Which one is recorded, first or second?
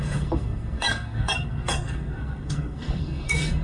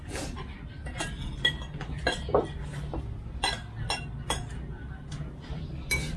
second